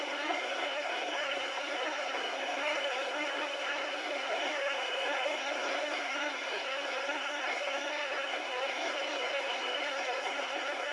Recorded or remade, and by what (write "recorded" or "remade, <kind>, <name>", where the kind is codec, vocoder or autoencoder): remade, codec, SNAC